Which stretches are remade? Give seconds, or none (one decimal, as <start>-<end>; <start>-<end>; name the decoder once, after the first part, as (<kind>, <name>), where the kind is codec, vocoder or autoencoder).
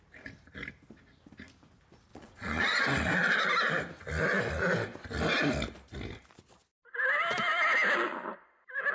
2.1-2.6 (vocoder, Vocos)